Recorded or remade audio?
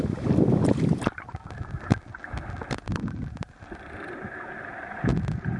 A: recorded